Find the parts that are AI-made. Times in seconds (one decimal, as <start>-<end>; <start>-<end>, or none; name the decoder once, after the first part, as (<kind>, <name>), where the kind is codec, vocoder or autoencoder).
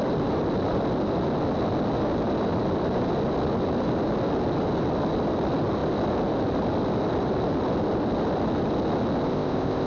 9.3-9.9 (codec, ZipCodec)